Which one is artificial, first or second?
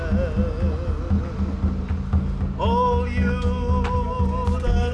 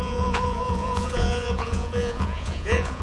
second